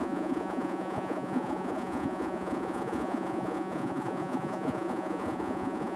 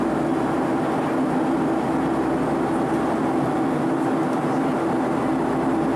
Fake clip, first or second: first